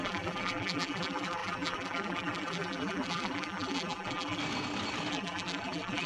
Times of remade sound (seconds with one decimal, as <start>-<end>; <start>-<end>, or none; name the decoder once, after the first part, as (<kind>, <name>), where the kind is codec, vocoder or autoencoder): 0.0-4.4 (vocoder, BigVGAN v2); 5.1-6.1